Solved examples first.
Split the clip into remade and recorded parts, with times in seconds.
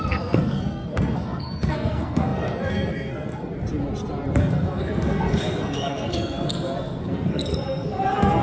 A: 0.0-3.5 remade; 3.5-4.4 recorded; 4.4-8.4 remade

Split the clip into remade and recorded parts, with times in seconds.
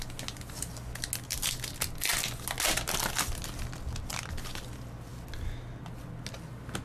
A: 0.0-6.8 recorded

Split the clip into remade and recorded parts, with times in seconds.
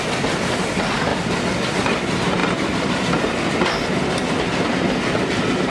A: 0.0-1.1 recorded; 1.1-1.7 remade; 1.7-2.4 recorded; 2.4-3.6 remade; 3.6-5.7 recorded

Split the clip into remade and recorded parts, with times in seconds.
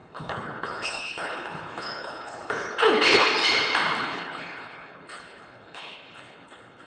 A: 0.0-3.3 remade; 3.3-4.0 recorded; 4.0-6.9 remade